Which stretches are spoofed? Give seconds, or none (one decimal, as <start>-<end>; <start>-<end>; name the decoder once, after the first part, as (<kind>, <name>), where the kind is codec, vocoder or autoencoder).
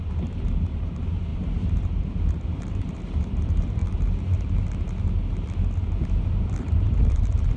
0.0-3.8 (vocoder, BigVGAN v2); 6.4-7.6